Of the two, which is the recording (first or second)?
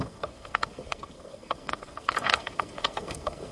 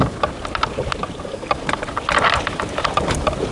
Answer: second